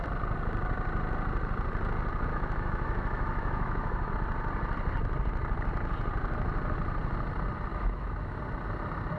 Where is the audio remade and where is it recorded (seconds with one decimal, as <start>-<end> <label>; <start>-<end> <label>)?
0.0-2.3 recorded; 2.3-4.1 remade; 4.1-7.7 recorded; 7.7-8.4 remade; 8.4-9.2 recorded